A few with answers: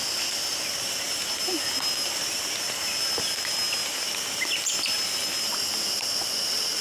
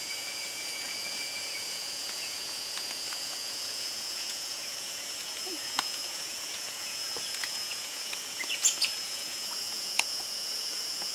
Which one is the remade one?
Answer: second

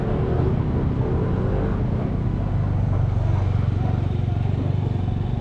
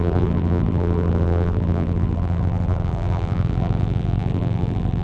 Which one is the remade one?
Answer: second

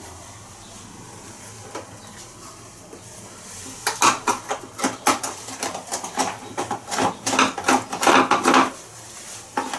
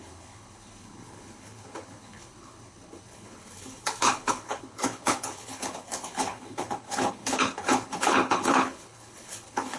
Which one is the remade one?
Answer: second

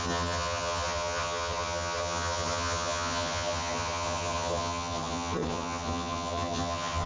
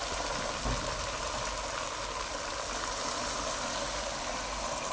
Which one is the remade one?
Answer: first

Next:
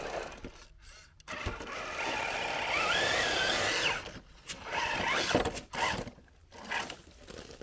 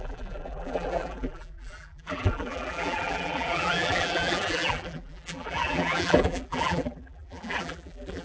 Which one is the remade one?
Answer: second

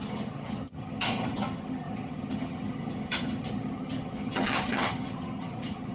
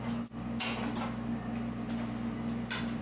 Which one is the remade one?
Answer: first